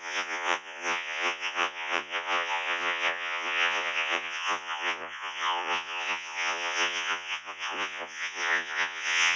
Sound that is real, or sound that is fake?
fake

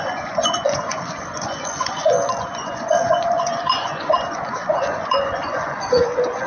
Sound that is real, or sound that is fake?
fake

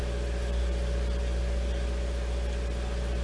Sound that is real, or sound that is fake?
real